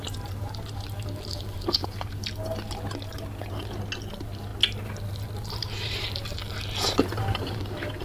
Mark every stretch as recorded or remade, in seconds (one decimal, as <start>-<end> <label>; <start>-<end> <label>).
0.0-2.1 remade; 2.1-4.1 recorded; 4.1-4.5 remade; 4.5-5.4 recorded; 5.4-6.4 remade; 6.4-7.0 recorded; 7.0-8.0 remade